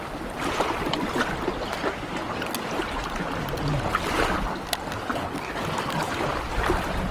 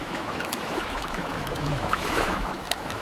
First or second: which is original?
first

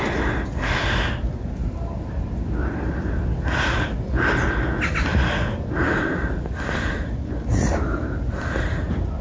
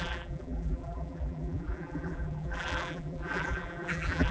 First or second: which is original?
first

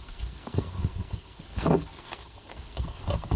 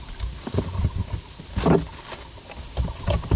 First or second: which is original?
second